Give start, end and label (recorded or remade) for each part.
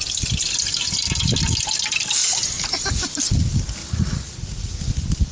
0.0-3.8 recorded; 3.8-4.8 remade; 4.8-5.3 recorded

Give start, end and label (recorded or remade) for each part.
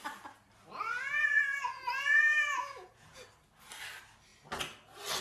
0.0-1.2 recorded; 1.2-3.3 remade; 3.3-5.2 recorded